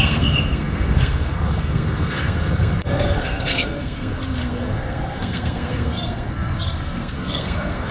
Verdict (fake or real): fake